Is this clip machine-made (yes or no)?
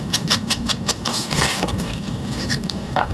yes